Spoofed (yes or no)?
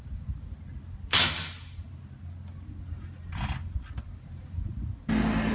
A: no